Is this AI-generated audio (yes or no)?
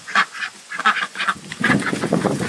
yes